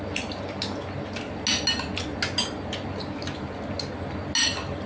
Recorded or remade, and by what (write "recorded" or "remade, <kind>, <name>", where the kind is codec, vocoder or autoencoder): recorded